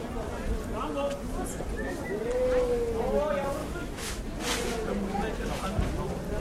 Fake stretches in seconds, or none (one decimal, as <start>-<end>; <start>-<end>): 3.6-4.2